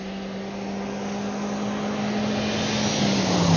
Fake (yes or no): no